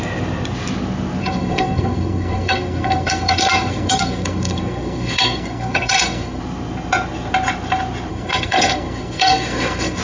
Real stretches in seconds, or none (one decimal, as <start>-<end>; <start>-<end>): 0.0-1.2; 6.4-8.1